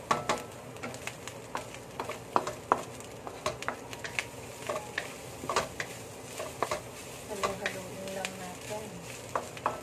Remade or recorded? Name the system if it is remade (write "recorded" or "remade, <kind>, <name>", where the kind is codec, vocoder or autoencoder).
recorded